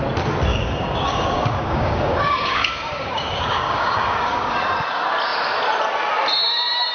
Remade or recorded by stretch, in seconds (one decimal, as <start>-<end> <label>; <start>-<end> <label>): 0.0-0.5 recorded; 0.5-4.6 remade; 4.6-6.9 recorded